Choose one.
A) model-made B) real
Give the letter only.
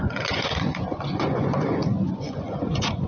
A